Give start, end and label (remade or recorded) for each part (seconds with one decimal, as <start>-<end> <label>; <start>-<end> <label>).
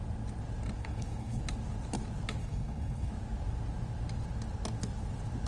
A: 0.0-0.8 recorded; 0.8-1.4 remade; 1.4-2.4 recorded; 2.4-3.1 remade; 3.1-5.5 recorded